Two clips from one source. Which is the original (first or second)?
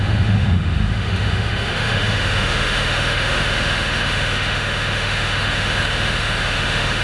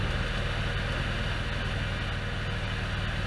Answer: second